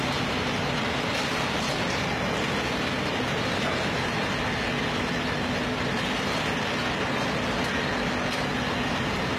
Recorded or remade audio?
recorded